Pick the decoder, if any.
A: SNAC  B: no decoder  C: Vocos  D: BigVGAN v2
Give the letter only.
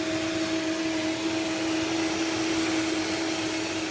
B